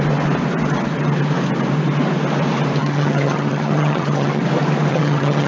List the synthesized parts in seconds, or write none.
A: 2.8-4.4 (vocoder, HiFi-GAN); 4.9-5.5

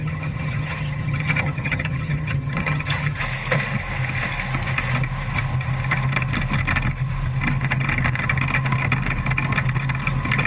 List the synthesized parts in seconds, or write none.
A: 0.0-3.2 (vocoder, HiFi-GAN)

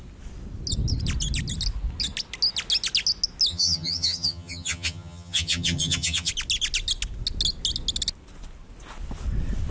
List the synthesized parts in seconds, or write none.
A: 3.5-6.3 (vocoder, HiFi-GAN)

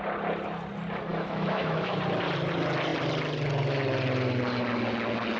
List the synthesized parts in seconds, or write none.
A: 1.1-2.0 (autoencoder, DAC-VAE)

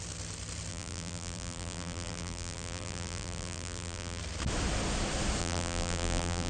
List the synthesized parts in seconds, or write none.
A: 0.7-4.2 (vocoder, BigVGAN v2); 5.4-6.5